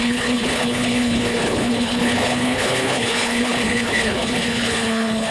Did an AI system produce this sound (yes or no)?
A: yes